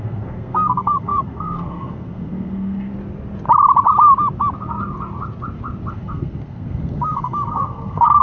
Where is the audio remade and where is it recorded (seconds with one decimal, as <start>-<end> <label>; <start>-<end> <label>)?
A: 0.0-2.9 remade; 2.9-5.9 recorded; 5.9-8.2 remade